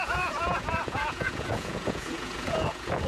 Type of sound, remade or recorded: remade